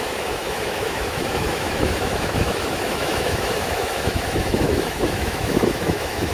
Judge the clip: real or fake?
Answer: fake